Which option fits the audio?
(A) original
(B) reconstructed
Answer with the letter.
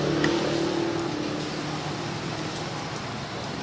A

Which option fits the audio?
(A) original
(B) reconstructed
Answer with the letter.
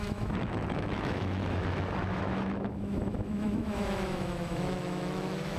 B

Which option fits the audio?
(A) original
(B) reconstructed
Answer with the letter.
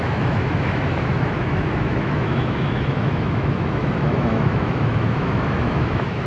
B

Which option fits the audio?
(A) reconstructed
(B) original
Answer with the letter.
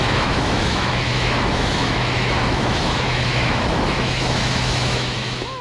A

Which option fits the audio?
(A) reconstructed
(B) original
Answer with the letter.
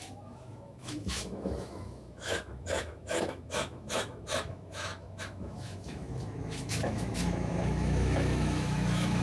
A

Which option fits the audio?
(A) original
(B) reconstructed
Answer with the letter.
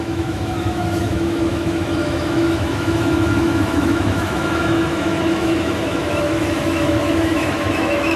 B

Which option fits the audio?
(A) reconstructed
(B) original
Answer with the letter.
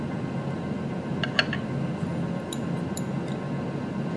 B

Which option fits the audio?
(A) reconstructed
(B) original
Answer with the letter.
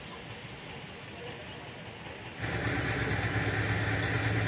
B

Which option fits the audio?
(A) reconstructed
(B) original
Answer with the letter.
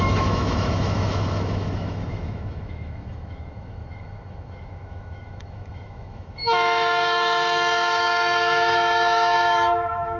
A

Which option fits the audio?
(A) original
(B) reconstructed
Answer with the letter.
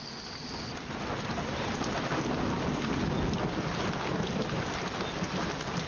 A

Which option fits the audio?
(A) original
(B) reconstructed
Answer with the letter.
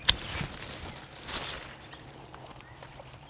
A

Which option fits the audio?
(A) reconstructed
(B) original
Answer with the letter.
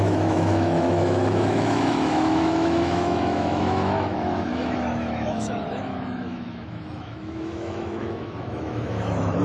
A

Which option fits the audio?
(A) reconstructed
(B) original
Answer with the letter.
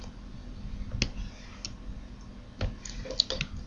B